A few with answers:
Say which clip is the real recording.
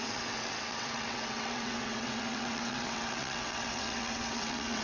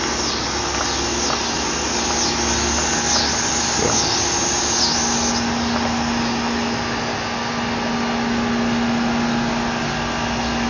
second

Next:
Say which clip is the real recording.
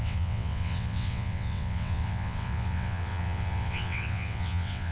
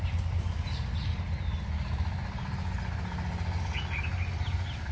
second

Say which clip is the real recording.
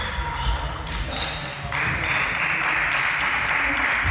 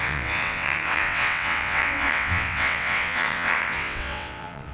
first